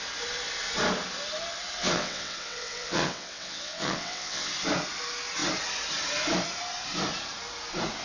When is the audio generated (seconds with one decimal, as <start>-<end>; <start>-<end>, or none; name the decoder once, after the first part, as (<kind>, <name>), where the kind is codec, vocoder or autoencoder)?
1.8-4.5 (vocoder, WaveNeXt)